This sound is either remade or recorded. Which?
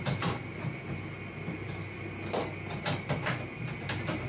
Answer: recorded